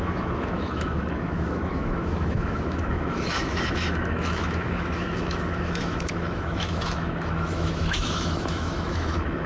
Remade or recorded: remade